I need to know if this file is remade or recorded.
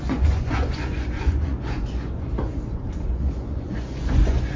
remade